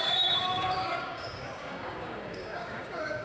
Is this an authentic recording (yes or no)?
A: no